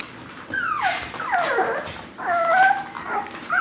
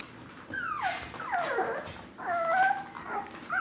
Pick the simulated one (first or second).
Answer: first